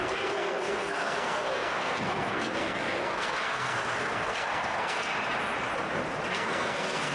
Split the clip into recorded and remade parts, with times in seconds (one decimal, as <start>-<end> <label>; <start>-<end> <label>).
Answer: 0.0-5.1 remade; 5.1-6.3 recorded; 6.3-7.1 remade